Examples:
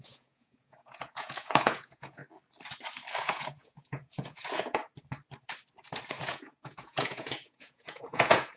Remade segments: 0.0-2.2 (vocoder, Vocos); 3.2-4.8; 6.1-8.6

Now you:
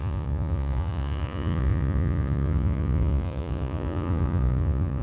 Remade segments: 0.0-5.0 (vocoder, Vocos)

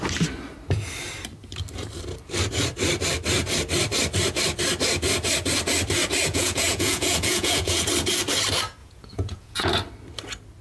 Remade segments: 6.3-7.9 (vocoder, Vocos); 8.8-9.7

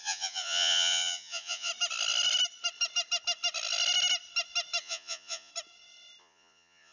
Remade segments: 0.0-1.7 (vocoder, Vocos); 4.8-5.5; 6.2-6.9